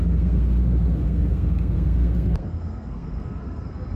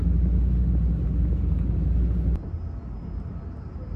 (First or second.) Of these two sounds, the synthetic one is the first